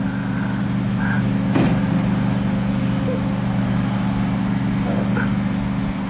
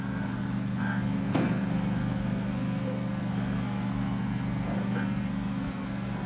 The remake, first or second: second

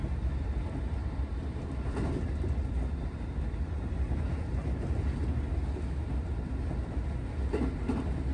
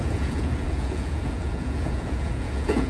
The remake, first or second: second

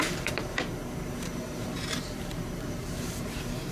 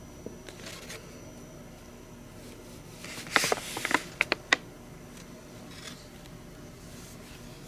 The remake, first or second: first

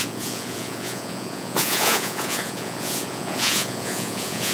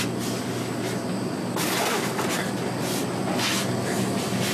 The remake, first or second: first